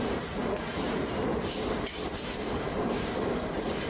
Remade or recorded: remade